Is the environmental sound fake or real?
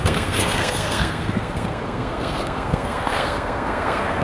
fake